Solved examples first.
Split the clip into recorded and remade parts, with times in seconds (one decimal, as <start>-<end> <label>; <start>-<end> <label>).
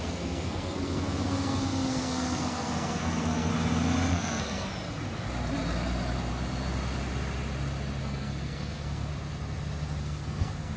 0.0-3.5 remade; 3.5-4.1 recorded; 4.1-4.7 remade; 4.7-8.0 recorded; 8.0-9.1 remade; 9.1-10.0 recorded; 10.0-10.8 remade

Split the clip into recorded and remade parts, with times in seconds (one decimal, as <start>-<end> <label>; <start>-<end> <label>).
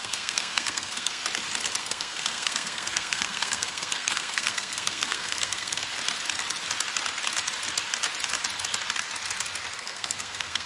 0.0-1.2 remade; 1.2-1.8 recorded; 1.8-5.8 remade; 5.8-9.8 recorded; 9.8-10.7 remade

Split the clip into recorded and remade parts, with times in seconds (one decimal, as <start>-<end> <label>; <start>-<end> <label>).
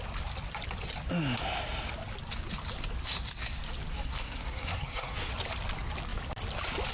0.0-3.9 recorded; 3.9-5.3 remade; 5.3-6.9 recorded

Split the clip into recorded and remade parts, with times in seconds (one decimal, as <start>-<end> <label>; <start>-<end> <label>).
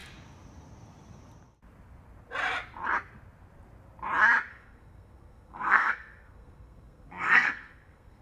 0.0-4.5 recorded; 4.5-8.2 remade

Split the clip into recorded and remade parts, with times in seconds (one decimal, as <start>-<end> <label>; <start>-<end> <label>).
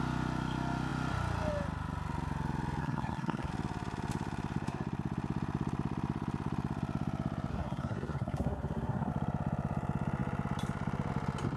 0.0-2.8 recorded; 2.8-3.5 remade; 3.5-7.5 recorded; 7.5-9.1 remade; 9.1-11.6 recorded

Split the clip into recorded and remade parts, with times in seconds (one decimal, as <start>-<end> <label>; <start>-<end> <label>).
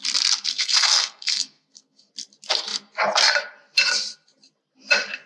0.0-0.5 recorded; 0.5-2.1 remade; 2.1-5.3 recorded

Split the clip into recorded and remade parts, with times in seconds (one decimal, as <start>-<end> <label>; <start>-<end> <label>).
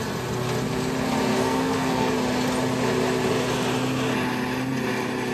0.0-1.3 recorded; 1.3-2.1 remade; 2.1-5.3 recorded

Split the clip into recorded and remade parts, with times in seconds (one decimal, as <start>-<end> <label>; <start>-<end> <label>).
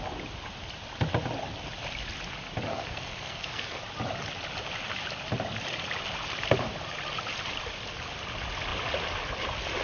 0.0-2.7 recorded; 2.7-3.8 remade; 3.8-9.8 recorded